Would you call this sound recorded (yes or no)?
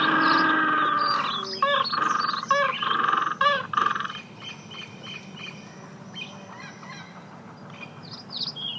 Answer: yes